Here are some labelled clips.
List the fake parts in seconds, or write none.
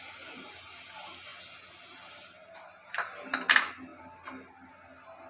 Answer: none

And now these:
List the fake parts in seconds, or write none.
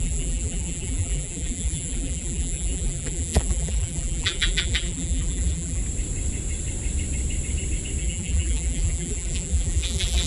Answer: 0.0-5.8 (vocoder, BigVGAN v2); 8.0-10.3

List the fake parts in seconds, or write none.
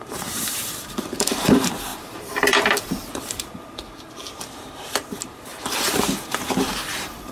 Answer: 0.0-7.3 (vocoder, BigVGAN v2)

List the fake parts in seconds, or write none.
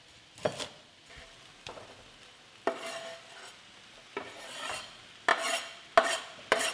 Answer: none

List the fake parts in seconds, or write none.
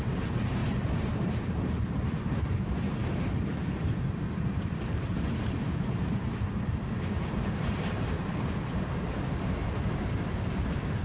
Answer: 0.0-0.6 (vocoder, BigVGAN v2); 1.1-11.0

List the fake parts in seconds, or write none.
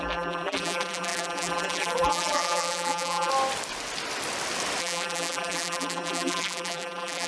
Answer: 0.0-3.3 (vocoder, BigVGAN v2); 4.8-7.3